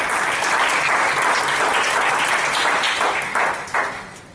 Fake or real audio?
real